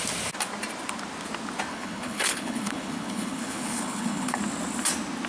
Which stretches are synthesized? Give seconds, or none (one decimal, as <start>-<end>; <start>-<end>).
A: 1.7-4.4